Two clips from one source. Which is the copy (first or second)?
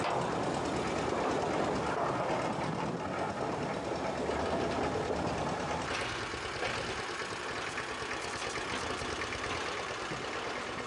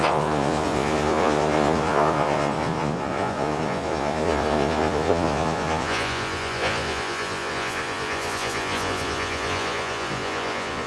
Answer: second